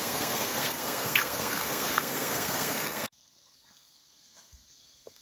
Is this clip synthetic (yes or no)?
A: yes